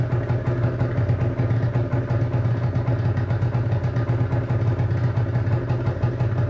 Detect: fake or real real